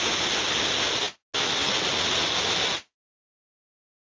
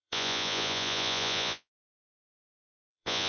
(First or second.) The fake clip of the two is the second